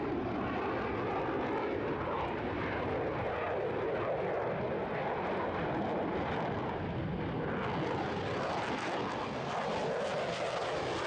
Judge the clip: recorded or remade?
recorded